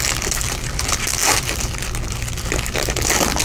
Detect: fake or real real